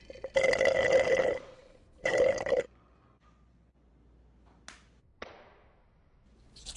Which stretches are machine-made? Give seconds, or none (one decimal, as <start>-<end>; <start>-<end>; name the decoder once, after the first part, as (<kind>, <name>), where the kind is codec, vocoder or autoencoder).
1.6-3.9 (vocoder, Vocos)